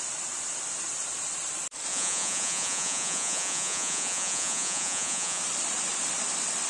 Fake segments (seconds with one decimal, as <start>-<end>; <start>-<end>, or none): 1.9-5.4